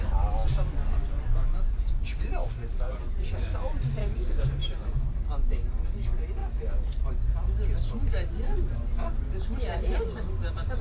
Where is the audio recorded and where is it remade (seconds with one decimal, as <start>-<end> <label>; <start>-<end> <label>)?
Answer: 0.0-4.0 recorded; 4.0-4.6 remade; 4.6-10.8 recorded